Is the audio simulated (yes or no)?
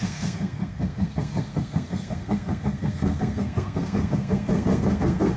yes